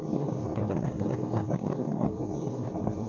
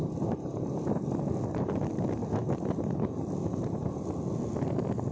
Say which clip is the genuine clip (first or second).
second